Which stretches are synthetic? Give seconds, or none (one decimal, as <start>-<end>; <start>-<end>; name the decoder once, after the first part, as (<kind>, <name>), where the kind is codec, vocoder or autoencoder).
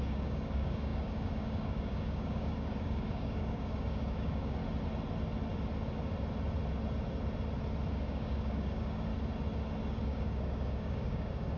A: 0.0-4.6 (codec, DAC); 7.9-9.1; 9.8-11.6